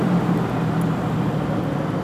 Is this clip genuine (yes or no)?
no